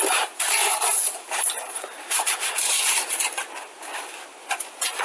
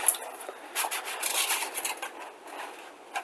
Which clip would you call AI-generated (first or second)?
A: first